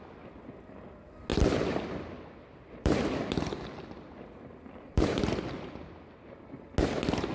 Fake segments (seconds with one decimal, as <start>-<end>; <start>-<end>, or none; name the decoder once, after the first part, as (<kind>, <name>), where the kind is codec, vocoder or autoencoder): 1.3-5.4 (vocoder, BigVGAN v2)